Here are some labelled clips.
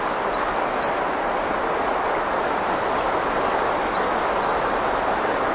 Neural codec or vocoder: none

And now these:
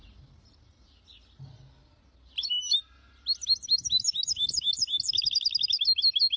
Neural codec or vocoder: none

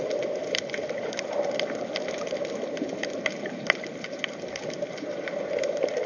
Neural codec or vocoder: none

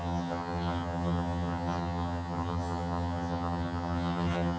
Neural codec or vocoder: vocoder, HiFi-GAN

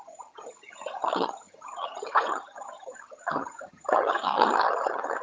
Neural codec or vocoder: vocoder, HiFi-GAN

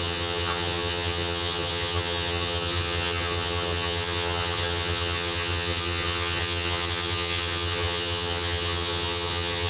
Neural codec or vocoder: vocoder, HiFi-GAN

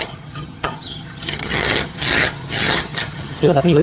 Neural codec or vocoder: vocoder, HiFi-GAN